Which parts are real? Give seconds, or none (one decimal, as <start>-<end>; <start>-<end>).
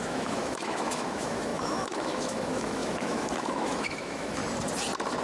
4.4-5.2